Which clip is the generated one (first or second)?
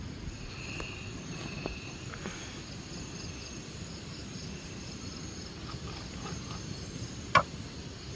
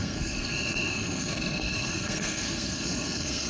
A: second